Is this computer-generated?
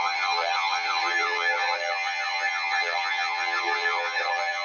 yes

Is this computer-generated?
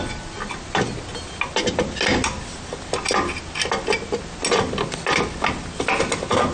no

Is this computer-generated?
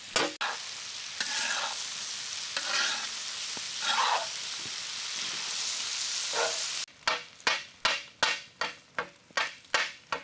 no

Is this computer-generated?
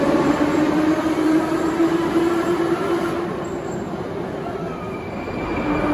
no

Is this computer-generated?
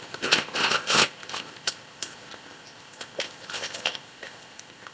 yes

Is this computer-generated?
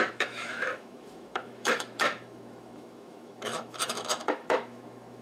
yes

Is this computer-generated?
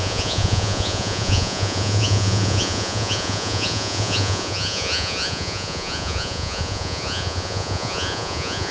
yes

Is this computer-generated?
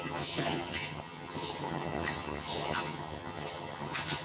yes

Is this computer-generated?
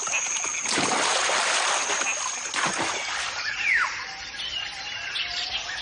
no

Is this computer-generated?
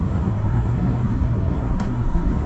yes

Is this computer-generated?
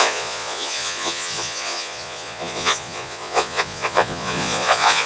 yes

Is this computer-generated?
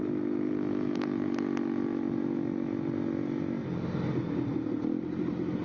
no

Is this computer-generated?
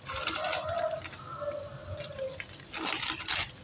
no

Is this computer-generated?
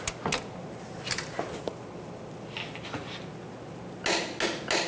no